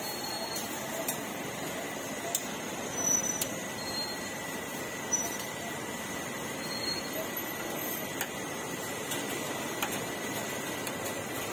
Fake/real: fake